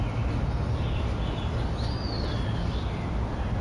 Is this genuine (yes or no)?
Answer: yes